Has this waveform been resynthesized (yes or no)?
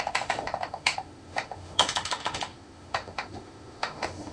yes